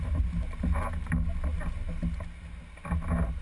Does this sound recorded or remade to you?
recorded